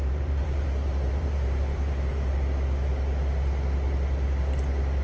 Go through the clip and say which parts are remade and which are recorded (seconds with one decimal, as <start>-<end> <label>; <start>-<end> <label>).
0.0-2.3 remade; 2.3-5.0 recorded

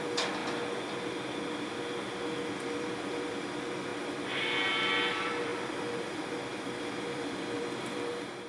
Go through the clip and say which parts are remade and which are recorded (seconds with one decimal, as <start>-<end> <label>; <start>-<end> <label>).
0.0-0.4 remade; 0.4-2.6 recorded; 2.6-3.9 remade; 3.9-5.1 recorded; 5.1-8.5 remade

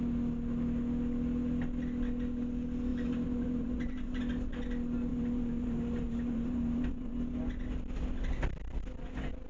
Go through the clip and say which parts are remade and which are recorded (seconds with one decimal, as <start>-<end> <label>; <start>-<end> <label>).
0.0-2.9 recorded; 2.9-4.2 remade; 4.2-5.1 recorded; 5.1-7.1 remade; 7.1-9.5 recorded

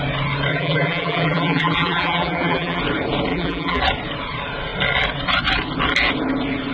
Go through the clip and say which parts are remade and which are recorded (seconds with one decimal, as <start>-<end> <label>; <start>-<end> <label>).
0.0-0.5 recorded; 0.5-2.8 remade; 2.8-3.3 recorded; 3.3-3.8 remade; 3.8-6.7 recorded

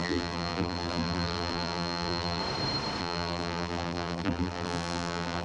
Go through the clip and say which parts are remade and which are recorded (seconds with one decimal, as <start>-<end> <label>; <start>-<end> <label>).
0.0-2.4 remade; 2.4-3.0 recorded; 3.0-5.4 remade

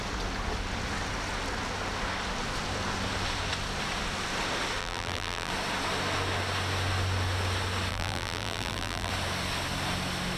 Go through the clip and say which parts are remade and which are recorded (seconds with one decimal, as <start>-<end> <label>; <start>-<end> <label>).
0.0-4.8 recorded; 4.8-5.5 remade; 5.5-7.9 recorded; 7.9-9.1 remade; 9.1-10.4 recorded

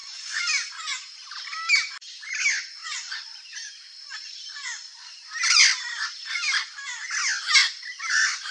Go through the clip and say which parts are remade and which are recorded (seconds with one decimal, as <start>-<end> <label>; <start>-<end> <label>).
0.0-2.8 recorded; 2.8-5.3 remade; 5.3-7.6 recorded; 7.6-8.5 remade

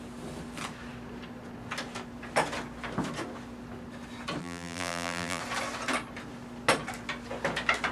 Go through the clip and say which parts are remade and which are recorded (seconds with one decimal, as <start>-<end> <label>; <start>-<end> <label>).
0.0-4.4 recorded; 4.4-5.4 remade; 5.4-7.9 recorded